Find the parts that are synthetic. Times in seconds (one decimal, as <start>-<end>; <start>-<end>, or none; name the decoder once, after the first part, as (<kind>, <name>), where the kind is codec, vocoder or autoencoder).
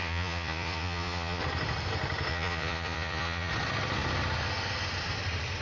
0.0-1.4 (vocoder, Vocos); 2.3-3.5